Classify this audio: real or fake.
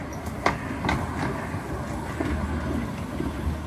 real